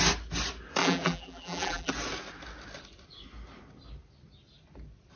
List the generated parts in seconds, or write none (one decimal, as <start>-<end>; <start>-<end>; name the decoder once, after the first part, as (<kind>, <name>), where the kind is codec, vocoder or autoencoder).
0.8-1.9 (vocoder, BigVGAN v2)